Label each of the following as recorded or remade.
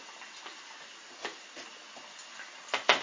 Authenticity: recorded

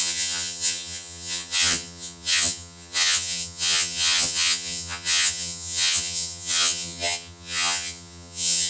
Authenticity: remade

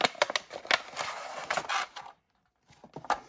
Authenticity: recorded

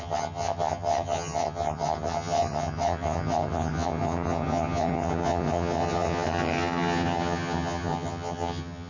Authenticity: remade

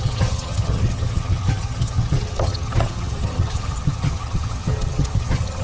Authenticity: remade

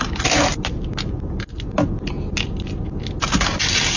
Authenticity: recorded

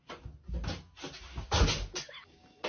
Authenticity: recorded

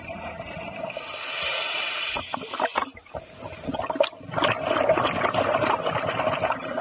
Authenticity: recorded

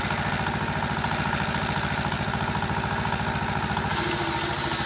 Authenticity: recorded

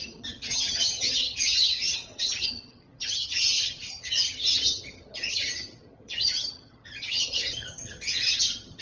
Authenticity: remade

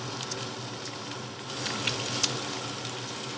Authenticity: recorded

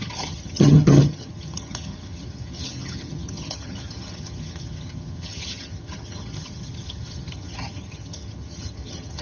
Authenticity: remade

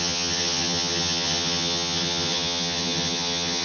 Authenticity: remade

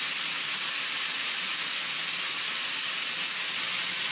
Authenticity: recorded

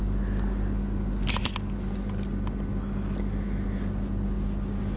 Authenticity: recorded